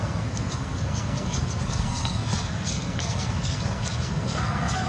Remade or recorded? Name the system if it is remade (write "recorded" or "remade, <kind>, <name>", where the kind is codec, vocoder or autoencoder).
remade, codec, SNAC